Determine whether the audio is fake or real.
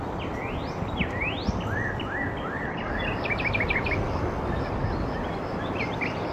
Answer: real